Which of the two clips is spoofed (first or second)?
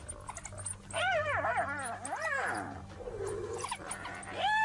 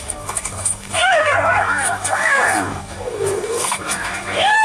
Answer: second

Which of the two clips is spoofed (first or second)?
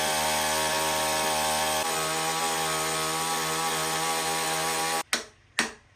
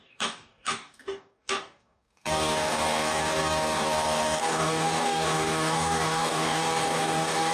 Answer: second